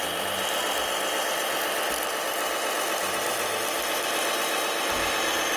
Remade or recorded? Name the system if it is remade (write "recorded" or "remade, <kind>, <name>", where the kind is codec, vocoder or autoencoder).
recorded